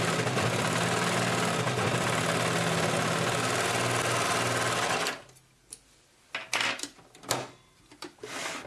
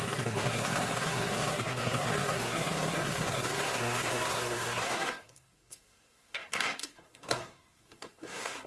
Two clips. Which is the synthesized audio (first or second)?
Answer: second